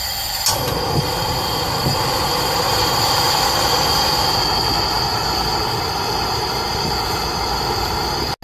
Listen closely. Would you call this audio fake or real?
real